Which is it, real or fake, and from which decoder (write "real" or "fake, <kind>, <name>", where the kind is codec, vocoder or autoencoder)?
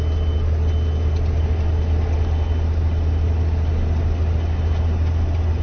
real